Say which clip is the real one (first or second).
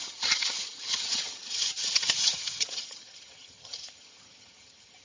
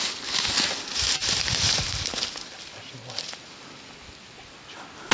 second